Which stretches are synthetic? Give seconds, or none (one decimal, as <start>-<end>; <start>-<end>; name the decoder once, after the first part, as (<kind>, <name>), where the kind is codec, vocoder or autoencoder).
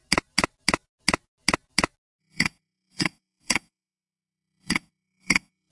2.2-5.7 (codec, SNAC)